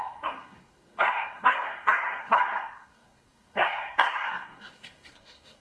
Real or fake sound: fake